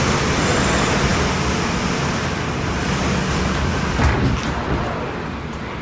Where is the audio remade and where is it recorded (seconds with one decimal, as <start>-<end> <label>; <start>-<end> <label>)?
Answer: 0.0-5.8 recorded